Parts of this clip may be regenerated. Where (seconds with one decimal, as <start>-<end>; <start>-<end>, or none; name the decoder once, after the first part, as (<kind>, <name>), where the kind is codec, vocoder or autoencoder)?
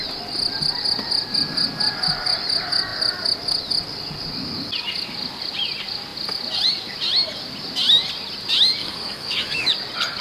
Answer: 8.8-9.7 (codec, DAC)